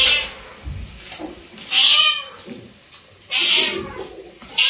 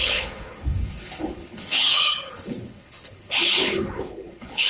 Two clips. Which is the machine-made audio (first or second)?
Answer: second